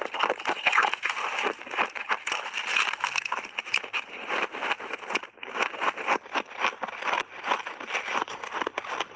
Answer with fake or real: real